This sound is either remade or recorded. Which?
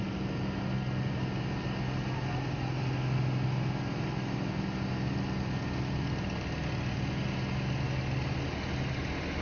recorded